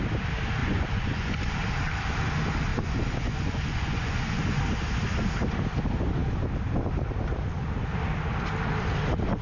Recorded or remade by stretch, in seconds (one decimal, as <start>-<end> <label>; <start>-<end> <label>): 0.0-0.6 recorded; 0.6-1.5 remade; 1.5-2.7 recorded; 2.7-4.6 remade; 4.6-9.4 recorded